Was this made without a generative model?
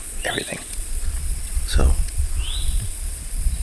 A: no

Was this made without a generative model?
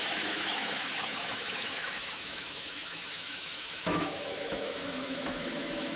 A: no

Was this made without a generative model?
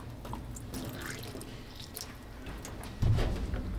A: yes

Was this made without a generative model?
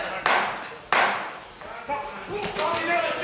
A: yes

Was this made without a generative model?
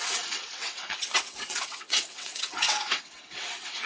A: no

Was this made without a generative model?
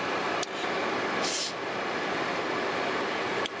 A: yes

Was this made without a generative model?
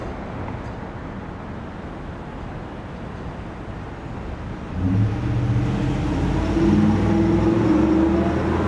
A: yes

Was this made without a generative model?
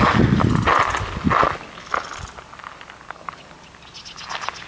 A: yes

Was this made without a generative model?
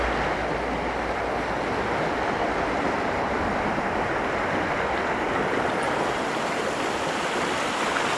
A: yes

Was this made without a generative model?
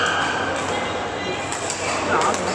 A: yes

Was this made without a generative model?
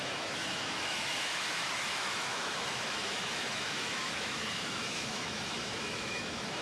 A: no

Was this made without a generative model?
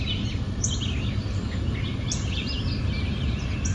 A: yes